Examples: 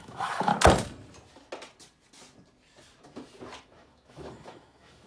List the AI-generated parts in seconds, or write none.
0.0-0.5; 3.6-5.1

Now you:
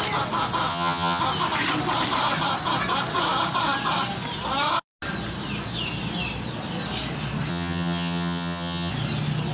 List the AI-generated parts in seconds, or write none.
0.7-1.2; 7.5-8.9

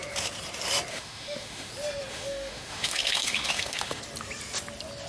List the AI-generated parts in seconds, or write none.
0.9-1.7; 2.1-4.0

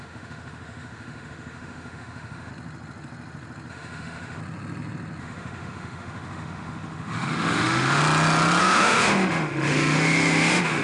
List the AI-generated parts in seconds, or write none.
0.0-2.5; 3.7-4.4; 5.2-8.0; 8.6-10.8

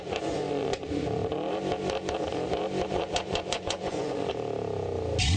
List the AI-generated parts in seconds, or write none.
0.0-1.2; 2.9-4.3

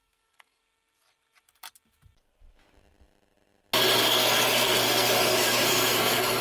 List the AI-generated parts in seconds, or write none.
0.0-0.6; 4.0-6.4

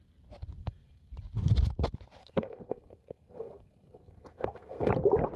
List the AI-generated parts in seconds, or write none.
0.6-1.1; 2.2-4.9

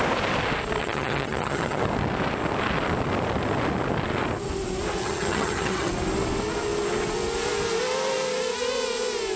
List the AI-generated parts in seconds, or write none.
0.8-1.8; 5.0-5.9